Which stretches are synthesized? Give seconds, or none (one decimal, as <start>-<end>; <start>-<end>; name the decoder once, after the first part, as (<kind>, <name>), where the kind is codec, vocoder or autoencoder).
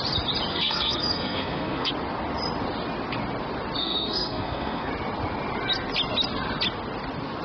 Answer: 0.5-1.9 (codec, SNAC); 3.8-4.9